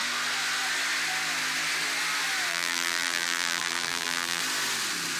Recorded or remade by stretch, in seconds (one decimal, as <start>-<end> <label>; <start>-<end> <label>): 0.0-2.5 recorded; 2.5-4.4 remade; 4.4-5.2 recorded